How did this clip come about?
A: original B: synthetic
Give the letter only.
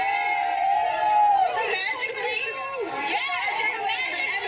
B